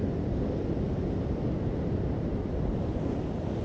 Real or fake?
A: real